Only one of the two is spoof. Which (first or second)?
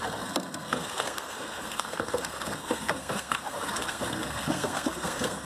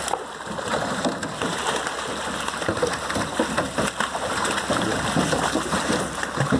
first